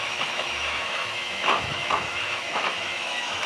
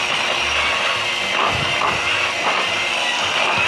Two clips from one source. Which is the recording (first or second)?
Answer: second